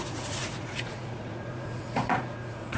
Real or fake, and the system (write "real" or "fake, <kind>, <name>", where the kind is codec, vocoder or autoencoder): fake, vocoder, Vocos